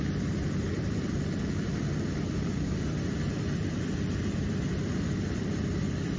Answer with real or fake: fake